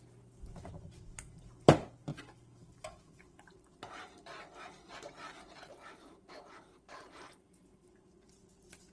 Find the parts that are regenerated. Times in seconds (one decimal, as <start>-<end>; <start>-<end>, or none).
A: 2.1-4.9; 6.1-8.3